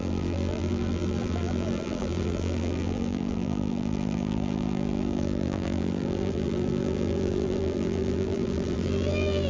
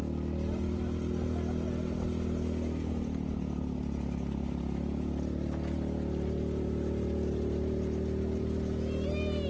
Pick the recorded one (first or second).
second